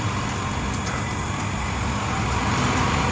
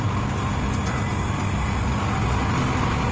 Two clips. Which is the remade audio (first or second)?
first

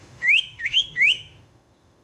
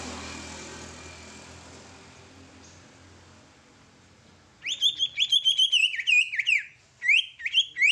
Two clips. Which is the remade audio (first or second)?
first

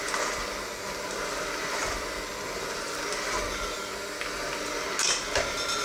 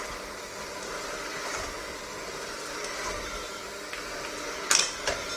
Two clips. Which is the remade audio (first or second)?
second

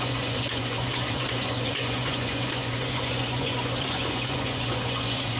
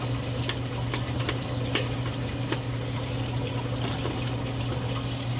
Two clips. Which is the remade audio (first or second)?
first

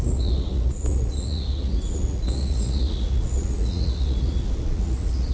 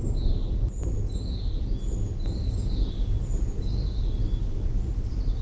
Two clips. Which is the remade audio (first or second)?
first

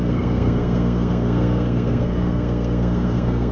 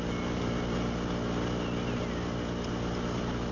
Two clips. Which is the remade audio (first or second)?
first